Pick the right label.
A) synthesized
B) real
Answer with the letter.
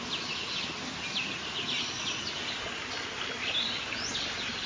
B